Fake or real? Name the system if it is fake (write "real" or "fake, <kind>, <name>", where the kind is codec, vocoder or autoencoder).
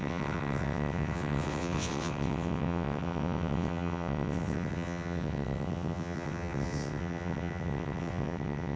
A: fake, vocoder, WaveNeXt